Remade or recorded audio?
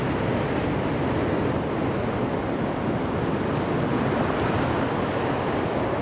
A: recorded